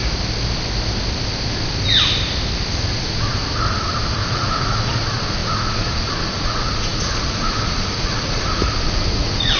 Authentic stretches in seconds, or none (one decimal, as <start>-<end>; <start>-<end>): 0.0-3.0; 3.4-4.2